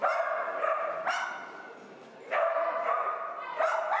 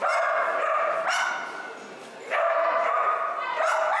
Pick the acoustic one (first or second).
second